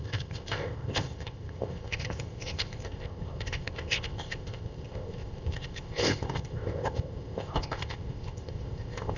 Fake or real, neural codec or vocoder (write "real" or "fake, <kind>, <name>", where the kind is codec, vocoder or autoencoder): fake, codec, ZipCodec